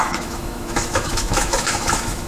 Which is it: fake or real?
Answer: fake